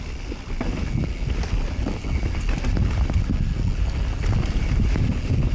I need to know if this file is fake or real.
real